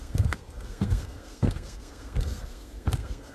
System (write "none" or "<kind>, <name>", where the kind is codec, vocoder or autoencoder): codec, SNAC